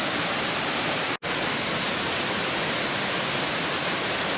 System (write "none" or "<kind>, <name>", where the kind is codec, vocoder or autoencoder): none